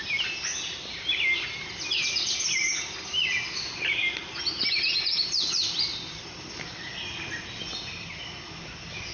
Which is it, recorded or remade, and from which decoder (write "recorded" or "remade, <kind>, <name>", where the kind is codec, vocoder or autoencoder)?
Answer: recorded